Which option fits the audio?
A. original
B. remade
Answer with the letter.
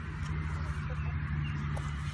A